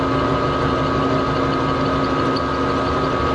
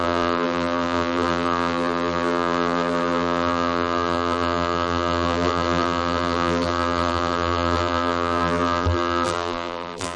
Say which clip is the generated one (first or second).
second